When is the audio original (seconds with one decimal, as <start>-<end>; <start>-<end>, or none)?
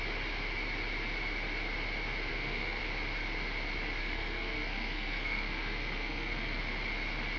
0.0-2.3; 2.8-4.0; 6.6-7.4